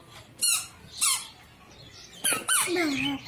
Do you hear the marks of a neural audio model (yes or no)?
no